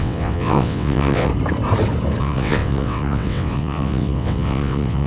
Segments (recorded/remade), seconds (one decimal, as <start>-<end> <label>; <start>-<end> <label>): 0.0-1.3 remade; 1.3-2.2 recorded; 2.2-5.1 remade

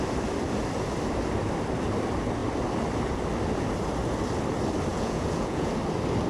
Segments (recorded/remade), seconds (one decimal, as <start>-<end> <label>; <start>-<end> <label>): 0.0-4.9 recorded; 4.9-5.7 remade; 5.7-6.3 recorded

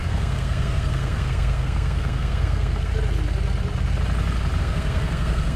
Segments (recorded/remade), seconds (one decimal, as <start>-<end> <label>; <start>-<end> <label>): 0.0-2.9 remade; 2.9-4.6 recorded; 4.6-5.6 remade

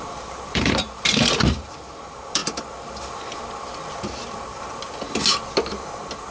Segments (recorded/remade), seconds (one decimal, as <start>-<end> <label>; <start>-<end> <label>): 0.0-2.4 remade; 2.4-6.3 recorded